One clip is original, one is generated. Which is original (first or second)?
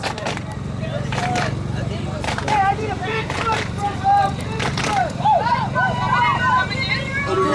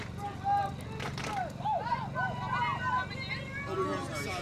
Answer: second